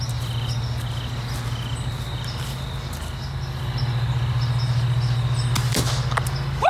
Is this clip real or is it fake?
real